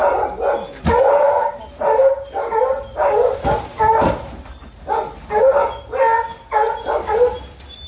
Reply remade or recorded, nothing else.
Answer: recorded